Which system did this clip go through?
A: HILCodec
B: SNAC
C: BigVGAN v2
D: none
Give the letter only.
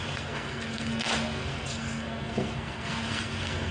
B